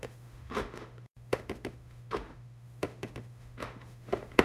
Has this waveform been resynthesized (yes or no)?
yes